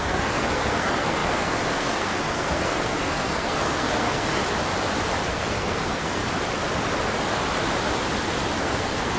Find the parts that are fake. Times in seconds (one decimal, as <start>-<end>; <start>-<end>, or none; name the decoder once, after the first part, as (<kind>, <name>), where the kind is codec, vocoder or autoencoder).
0.0-4.4 (codec, SNAC); 5.3-6.2; 8.6-9.2